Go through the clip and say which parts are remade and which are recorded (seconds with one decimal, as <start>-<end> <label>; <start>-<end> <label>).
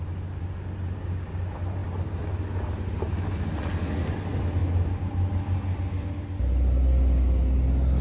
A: 0.0-8.0 recorded